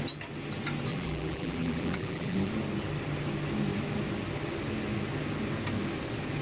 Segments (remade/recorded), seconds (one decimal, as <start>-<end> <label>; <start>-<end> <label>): 0.0-0.9 recorded; 0.9-2.5 remade; 2.5-6.4 recorded